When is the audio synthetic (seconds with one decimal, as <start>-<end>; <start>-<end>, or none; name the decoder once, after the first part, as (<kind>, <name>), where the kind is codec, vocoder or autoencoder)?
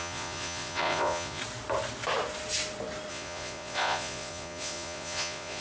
0.0-1.4 (vocoder, Vocos); 3.1-5.6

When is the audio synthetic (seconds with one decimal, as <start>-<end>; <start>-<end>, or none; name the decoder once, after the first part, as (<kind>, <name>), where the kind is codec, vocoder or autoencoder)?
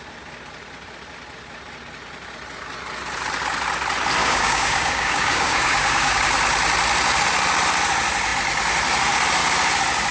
4.2-6.2 (codec, DAC)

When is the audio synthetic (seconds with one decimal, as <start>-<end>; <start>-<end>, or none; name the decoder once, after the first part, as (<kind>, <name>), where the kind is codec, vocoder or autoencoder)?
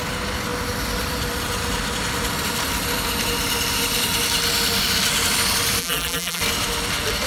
5.8-6.4 (vocoder, BigVGAN v2)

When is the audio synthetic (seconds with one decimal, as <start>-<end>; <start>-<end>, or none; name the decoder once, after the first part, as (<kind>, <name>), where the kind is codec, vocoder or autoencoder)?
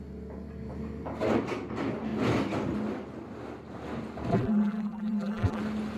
4.3-5.6 (vocoder, BigVGAN v2)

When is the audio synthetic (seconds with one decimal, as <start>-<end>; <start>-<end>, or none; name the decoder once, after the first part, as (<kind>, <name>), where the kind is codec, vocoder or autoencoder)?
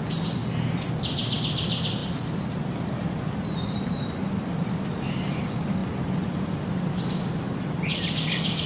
0.0-0.4 (vocoder, BigVGAN v2); 1.4-8.7